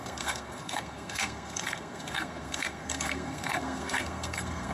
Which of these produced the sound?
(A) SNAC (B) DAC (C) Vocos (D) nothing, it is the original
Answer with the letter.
A